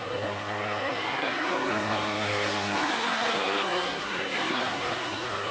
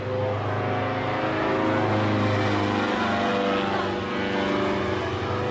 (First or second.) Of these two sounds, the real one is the second